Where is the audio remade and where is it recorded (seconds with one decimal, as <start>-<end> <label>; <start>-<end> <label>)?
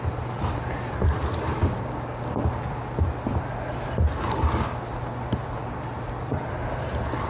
0.0-1.6 recorded; 1.6-2.4 remade; 2.4-7.3 recorded